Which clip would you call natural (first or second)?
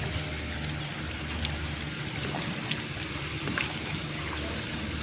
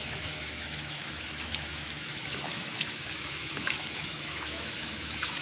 first